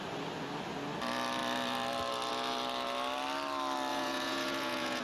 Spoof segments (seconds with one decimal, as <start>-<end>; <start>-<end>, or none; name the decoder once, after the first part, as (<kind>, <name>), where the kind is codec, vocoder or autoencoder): 3.9-5.0 (vocoder, Vocos)